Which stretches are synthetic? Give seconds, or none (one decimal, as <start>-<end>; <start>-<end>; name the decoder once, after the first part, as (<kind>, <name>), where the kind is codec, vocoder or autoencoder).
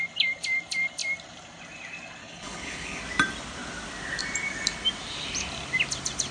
2.2-3.0 (codec, HILCodec)